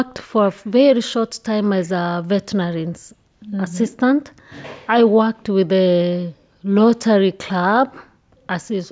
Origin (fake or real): real